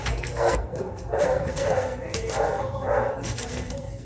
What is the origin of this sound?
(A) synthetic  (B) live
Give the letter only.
A